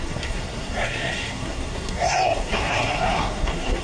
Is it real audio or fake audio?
fake